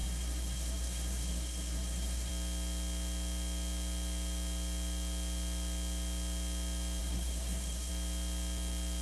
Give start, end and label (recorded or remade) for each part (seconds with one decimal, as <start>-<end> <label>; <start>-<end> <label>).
0.0-2.3 remade; 2.3-7.0 recorded; 7.0-7.9 remade; 7.9-9.0 recorded